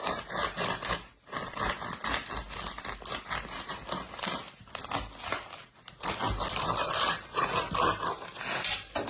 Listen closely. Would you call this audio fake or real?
real